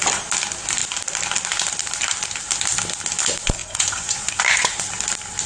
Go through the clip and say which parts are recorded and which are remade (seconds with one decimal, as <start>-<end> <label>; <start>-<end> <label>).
0.0-3.6 recorded; 3.6-4.8 remade; 4.8-5.5 recorded